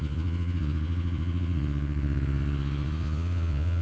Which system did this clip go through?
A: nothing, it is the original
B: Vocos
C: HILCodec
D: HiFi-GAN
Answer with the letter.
B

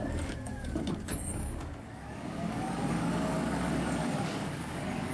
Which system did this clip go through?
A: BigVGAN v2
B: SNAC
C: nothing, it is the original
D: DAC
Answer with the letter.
D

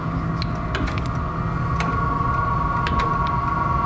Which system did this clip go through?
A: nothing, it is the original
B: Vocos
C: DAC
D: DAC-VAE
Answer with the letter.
A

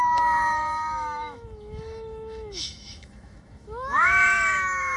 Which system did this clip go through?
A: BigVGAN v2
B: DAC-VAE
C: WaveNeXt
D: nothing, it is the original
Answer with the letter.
B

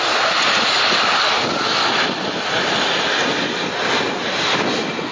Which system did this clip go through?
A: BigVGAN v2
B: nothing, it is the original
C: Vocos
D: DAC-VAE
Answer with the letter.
B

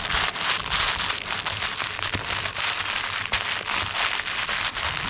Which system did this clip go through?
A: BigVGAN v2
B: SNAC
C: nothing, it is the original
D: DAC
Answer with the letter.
C